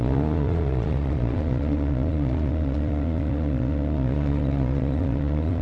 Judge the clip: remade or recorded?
remade